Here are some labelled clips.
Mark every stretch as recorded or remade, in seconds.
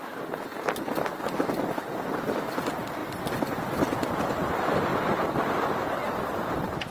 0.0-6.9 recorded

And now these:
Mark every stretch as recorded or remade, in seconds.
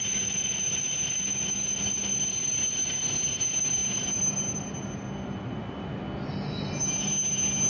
0.0-7.7 recorded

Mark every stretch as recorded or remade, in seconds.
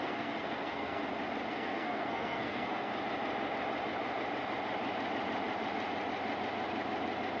0.0-1.0 remade; 1.0-1.5 recorded; 1.5-2.9 remade; 2.9-7.4 recorded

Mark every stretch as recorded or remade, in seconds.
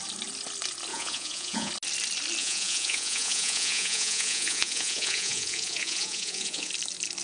0.0-0.9 recorded; 0.9-1.7 remade; 1.7-2.4 recorded; 2.4-6.7 remade; 6.7-7.2 recorded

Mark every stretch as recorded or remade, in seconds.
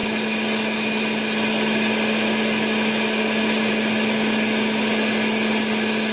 0.0-6.1 recorded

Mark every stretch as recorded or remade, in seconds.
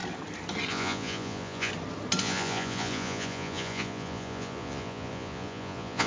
0.0-0.7 recorded; 0.7-1.7 remade; 1.7-2.2 recorded; 2.2-6.1 remade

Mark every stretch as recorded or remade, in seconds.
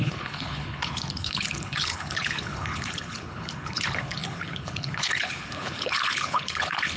0.0-7.0 remade